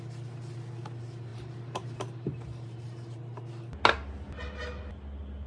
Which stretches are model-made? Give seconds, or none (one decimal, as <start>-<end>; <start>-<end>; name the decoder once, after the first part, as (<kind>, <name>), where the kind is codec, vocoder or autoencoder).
1.3-3.1 (vocoder, BigVGAN v2)